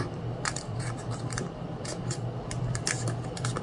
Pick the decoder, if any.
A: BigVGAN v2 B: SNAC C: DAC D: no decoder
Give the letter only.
A